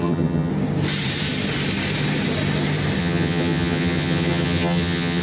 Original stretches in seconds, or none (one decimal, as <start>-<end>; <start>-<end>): 0.5-3.0